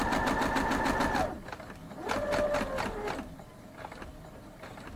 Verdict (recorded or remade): recorded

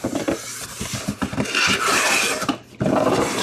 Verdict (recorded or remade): remade